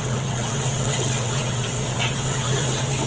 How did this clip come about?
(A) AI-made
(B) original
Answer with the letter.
A